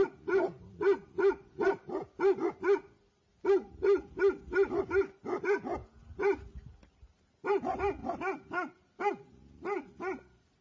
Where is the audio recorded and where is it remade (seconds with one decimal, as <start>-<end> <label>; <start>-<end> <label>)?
0.0-10.6 recorded